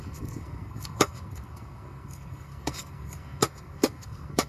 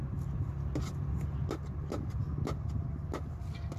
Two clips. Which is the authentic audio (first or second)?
second